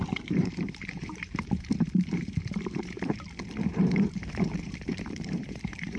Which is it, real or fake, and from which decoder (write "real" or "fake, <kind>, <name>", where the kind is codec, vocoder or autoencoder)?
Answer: fake, vocoder, BigVGAN v2